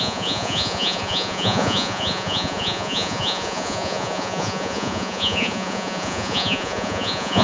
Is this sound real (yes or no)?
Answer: no